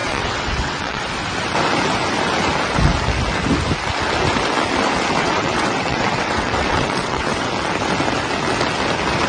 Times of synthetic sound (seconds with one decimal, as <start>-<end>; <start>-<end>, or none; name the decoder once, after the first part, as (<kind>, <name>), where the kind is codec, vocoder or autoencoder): 0.0-1.0 (vocoder, WaveNeXt); 5.2-7.5